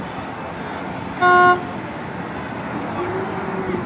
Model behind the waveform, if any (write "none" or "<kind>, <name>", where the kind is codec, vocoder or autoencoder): none